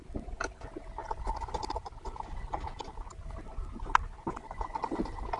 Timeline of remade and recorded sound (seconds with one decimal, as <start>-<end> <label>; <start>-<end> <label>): 0.0-5.4 recorded